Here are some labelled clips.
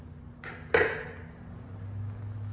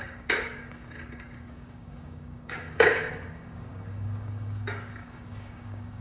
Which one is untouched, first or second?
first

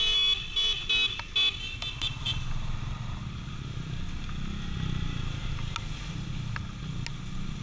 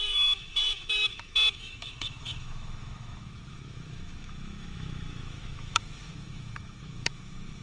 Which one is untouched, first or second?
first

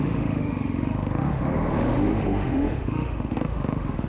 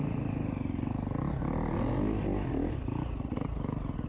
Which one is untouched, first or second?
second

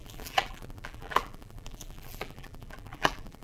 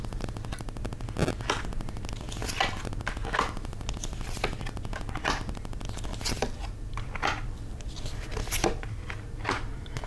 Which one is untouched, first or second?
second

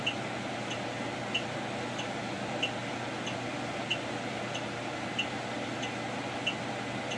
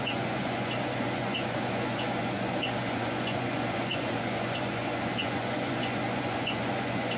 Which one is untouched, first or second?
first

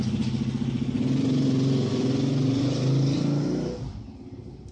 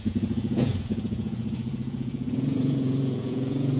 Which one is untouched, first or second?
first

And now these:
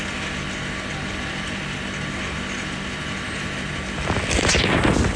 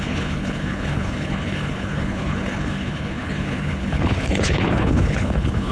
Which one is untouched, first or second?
first